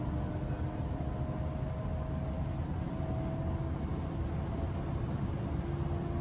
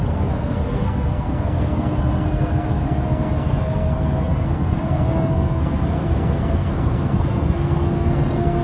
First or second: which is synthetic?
second